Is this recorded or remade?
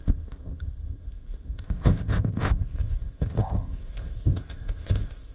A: remade